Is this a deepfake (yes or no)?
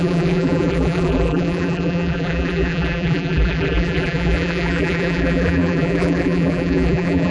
yes